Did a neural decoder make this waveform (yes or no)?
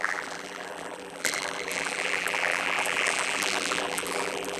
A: yes